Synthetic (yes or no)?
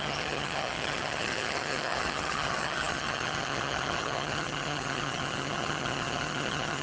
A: yes